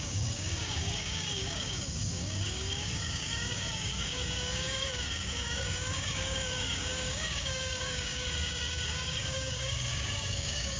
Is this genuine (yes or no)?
no